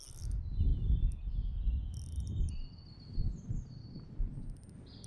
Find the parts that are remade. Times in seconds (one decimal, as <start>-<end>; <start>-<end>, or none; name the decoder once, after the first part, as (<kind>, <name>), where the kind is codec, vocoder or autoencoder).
0.7-2.5 (vocoder, BigVGAN v2); 3.3-3.9